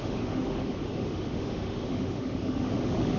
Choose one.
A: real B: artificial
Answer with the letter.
B